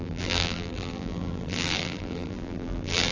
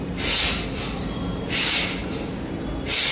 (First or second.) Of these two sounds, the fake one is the first